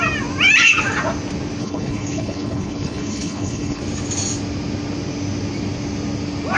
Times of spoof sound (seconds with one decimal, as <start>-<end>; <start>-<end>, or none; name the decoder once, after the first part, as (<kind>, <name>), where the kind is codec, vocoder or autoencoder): 1.6-3.8 (codec, HILCodec)